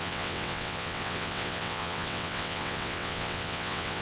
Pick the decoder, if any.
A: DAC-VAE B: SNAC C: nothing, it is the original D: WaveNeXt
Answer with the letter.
D